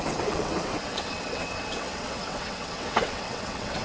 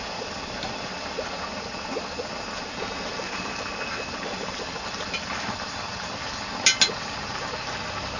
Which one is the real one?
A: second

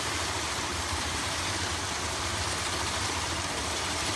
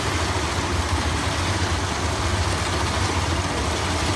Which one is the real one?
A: second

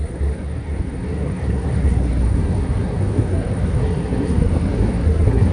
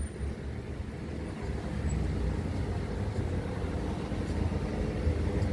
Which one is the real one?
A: second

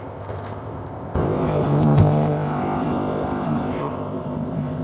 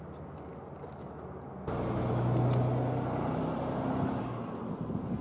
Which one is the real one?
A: second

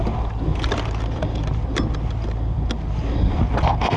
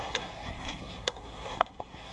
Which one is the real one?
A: first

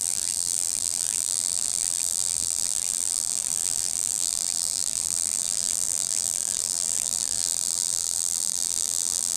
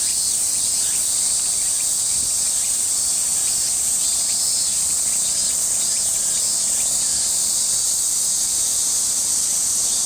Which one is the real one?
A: second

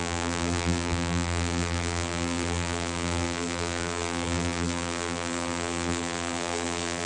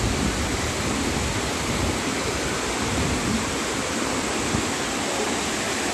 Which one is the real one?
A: second